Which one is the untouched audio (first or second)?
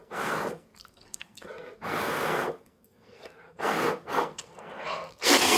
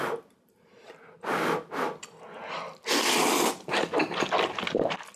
second